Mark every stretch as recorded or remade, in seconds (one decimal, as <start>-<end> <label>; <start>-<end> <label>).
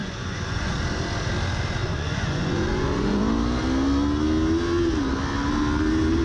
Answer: 0.0-0.7 remade; 0.7-1.8 recorded; 1.8-3.2 remade; 3.2-6.2 recorded